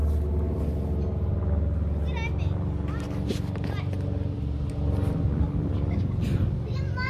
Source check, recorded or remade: recorded